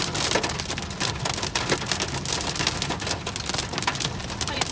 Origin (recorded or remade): recorded